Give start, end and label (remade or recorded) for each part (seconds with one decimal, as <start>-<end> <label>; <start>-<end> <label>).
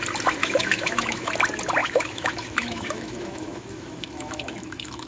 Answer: 0.0-0.4 recorded; 0.4-1.3 remade; 1.3-1.8 recorded; 1.8-5.1 remade